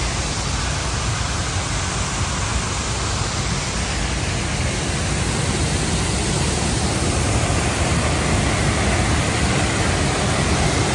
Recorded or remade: recorded